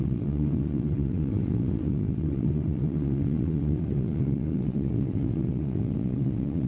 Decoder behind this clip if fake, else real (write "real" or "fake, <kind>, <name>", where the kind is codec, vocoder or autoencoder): fake, vocoder, WaveNeXt